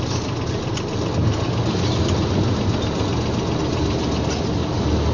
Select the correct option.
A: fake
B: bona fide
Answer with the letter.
B